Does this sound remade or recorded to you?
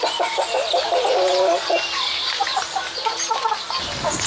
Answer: recorded